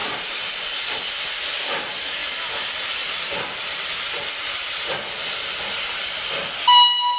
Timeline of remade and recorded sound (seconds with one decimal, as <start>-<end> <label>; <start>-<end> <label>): 0.0-1.2 remade; 1.2-7.2 recorded